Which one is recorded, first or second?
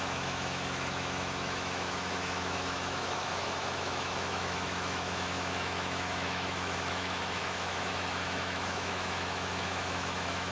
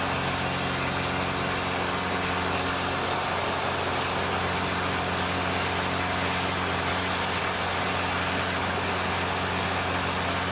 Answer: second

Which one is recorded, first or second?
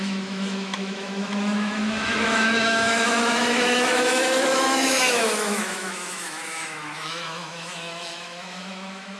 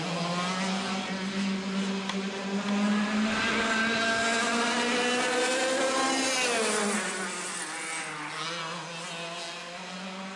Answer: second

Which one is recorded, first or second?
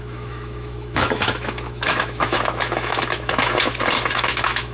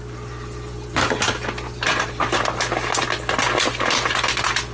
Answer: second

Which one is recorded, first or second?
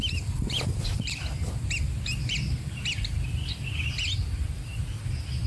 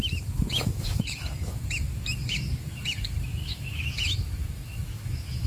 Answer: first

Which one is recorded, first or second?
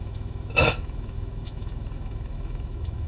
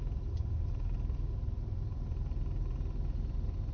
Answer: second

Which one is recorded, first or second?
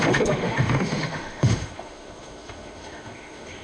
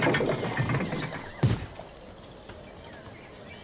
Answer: second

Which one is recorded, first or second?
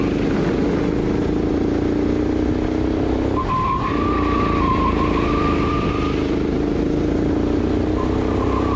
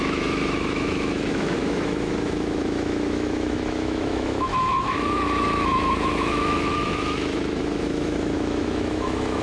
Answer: first